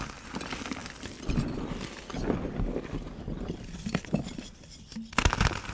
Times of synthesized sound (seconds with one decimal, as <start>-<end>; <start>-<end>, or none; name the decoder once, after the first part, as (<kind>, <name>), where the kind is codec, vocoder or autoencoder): none

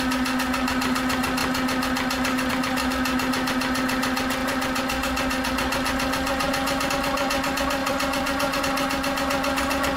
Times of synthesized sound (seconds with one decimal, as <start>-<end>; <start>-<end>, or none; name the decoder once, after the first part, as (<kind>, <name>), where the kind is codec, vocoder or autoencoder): 7.8-8.6 (vocoder, BigVGAN v2)

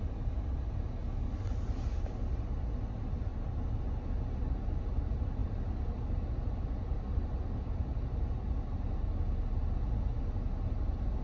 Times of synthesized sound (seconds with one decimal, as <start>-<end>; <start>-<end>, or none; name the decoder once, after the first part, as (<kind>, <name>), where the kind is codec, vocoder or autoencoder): 3.3-3.8 (vocoder, BigVGAN v2); 5.4-7.8

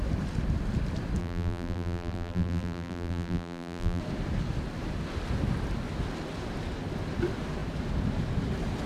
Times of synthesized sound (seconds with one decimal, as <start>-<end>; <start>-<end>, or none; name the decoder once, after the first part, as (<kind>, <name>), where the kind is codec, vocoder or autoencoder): 1.2-4.0 (vocoder, BigVGAN v2)